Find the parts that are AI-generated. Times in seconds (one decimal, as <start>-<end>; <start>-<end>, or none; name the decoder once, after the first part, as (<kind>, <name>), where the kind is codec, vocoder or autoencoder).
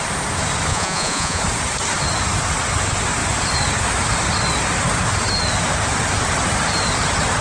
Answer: 0.7-1.4 (vocoder, Vocos)